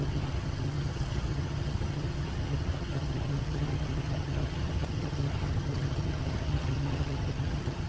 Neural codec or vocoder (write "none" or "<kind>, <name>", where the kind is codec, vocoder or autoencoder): vocoder, HiFi-GAN